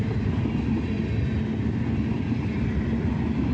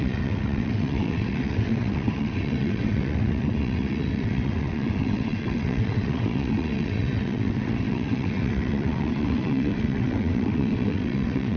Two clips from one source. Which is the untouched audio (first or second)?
first